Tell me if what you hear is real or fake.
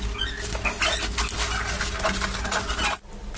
real